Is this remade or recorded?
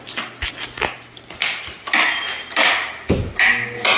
recorded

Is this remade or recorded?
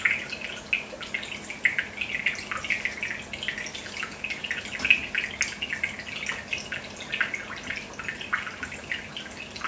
recorded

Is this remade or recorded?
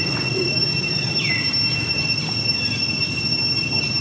recorded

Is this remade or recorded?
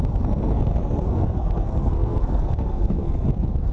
remade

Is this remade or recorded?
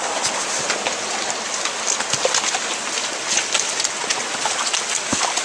recorded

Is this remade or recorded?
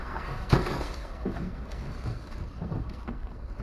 remade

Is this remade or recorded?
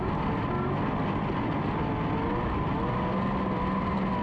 recorded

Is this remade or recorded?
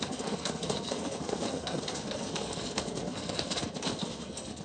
remade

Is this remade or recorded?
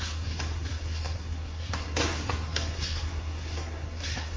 remade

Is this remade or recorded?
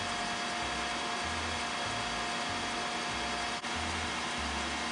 recorded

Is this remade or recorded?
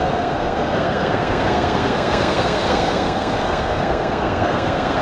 remade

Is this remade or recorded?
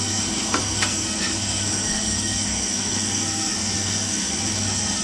remade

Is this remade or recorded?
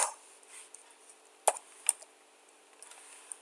recorded